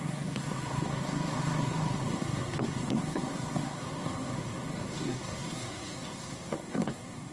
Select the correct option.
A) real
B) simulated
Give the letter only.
B